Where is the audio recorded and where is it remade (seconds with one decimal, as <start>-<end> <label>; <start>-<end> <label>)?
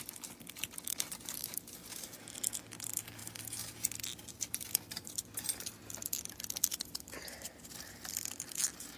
0.0-9.0 recorded